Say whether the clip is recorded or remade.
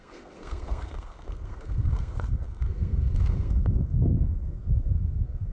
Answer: remade